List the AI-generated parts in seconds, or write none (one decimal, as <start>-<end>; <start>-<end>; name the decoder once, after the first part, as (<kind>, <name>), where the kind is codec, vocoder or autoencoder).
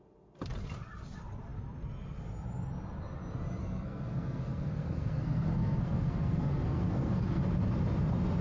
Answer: 3.6-7.4 (codec, SNAC)